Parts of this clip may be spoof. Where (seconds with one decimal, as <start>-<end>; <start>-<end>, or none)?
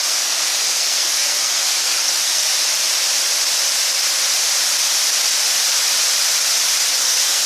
0.0-2.5; 7.0-7.5